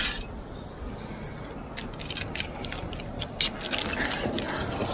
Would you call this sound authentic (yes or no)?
yes